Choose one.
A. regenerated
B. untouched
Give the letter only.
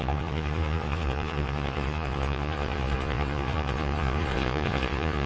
A